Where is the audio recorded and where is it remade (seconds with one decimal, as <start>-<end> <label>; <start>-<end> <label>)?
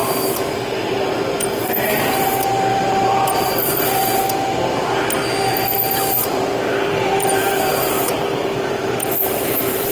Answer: 0.0-4.1 remade; 4.1-5.6 recorded; 5.6-9.9 remade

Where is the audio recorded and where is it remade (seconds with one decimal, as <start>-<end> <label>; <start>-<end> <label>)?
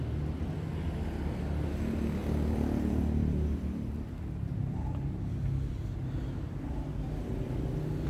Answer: 0.0-2.2 recorded; 2.2-6.0 remade; 6.0-8.1 recorded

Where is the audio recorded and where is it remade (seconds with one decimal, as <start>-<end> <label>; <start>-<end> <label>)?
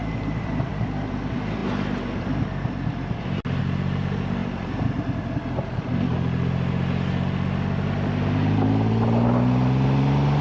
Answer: 0.0-0.7 remade; 0.7-4.4 recorded; 4.4-5.2 remade; 5.2-10.4 recorded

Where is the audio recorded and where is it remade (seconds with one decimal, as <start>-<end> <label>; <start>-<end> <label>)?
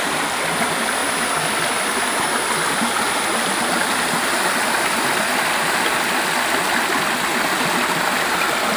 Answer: 0.0-8.8 remade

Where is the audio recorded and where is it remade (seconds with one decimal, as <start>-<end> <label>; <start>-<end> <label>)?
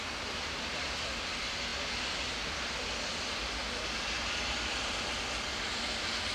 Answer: 0.0-6.3 recorded